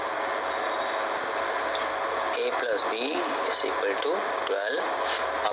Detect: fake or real real